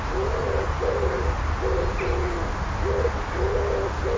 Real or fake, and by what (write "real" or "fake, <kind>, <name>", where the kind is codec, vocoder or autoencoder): real